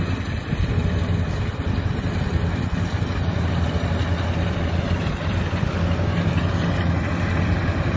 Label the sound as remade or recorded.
recorded